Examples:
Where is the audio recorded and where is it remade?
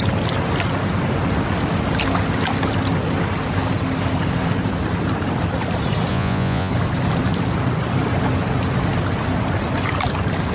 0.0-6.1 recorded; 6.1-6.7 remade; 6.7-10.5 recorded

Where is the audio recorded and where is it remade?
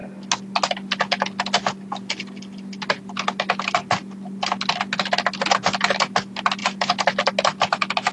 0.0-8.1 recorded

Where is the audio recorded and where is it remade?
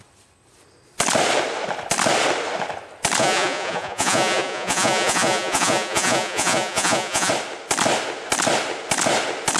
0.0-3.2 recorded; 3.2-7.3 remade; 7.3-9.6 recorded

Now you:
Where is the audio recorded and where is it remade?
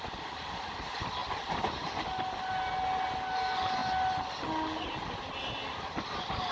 0.0-6.5 recorded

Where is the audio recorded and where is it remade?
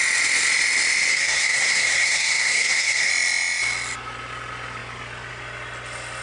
0.0-1.1 recorded; 1.1-3.1 remade; 3.1-6.2 recorded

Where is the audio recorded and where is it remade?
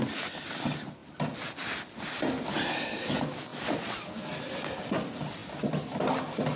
0.0-6.6 recorded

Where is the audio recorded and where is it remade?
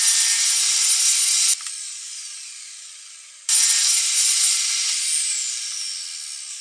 0.0-6.6 recorded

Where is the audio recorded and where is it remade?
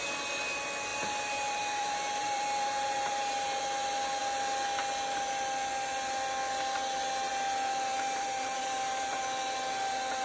0.0-0.9 recorded; 0.9-3.6 remade; 3.6-7.9 recorded; 7.9-9.2 remade; 9.2-10.2 recorded